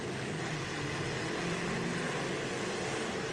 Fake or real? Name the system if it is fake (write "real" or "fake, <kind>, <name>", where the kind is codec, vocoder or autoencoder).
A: real